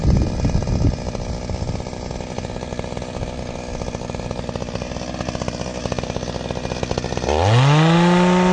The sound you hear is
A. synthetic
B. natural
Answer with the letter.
B